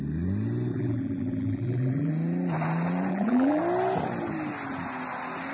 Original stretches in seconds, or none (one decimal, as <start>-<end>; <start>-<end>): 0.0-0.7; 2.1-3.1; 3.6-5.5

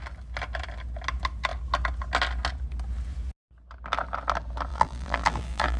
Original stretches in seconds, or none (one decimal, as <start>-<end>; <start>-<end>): 0.0-4.7

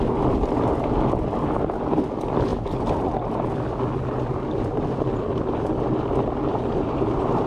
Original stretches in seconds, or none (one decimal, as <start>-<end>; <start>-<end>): 0.0-6.5

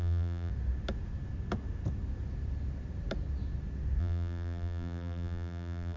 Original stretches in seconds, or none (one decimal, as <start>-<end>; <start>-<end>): 0.5-4.0